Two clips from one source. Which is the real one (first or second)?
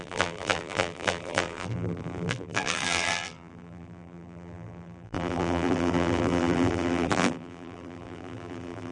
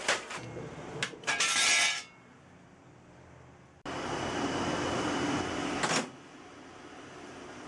second